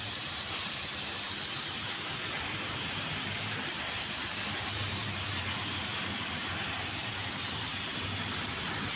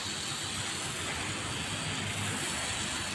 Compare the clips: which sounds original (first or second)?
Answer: second